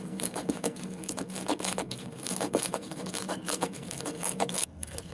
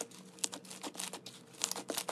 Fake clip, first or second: first